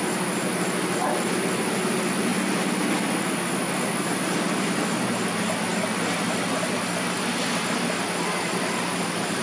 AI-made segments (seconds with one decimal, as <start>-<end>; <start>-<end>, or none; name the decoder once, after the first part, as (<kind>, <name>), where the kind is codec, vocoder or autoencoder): none